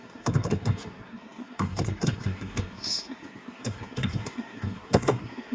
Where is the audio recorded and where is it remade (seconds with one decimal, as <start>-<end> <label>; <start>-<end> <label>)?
0.0-5.5 remade